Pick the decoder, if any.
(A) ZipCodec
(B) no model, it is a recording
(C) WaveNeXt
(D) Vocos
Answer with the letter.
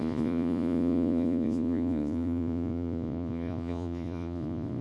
D